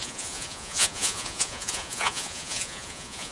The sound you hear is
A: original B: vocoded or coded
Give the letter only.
B